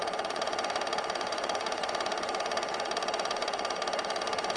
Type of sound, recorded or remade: remade